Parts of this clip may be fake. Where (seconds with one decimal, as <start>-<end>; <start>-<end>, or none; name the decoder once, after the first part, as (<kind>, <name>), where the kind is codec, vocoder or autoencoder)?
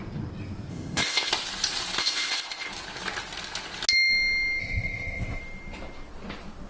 0.7-1.3 (codec, ZipCodec); 2.0-2.7; 4.6-5.4